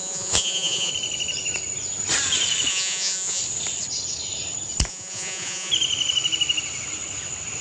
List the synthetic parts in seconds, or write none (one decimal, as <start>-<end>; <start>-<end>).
0.0-0.9; 2.7-3.4; 4.9-5.7

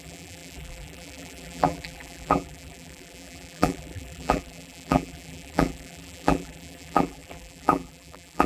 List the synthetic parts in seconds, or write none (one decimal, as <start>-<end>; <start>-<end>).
0.0-8.5

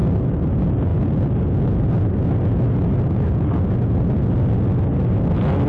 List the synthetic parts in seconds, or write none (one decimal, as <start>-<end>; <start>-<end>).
none

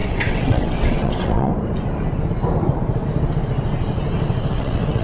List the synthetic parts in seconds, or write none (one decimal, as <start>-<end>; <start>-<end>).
0.0-1.5; 4.5-5.0

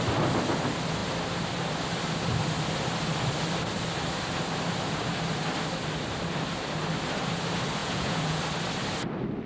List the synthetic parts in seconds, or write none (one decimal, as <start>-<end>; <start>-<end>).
7.8-8.4

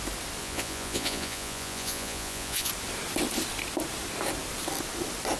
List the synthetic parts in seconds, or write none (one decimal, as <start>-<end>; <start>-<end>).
0.4-2.7

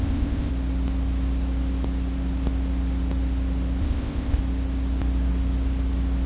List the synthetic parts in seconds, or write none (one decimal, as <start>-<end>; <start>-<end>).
0.0-0.5; 3.8-4.4

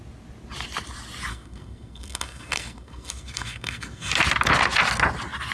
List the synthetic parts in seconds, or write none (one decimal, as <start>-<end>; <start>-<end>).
1.3-4.1